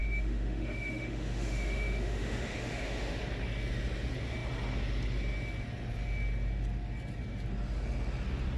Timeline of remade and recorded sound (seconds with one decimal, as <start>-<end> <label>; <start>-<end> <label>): 0.0-3.2 remade; 3.2-8.6 recorded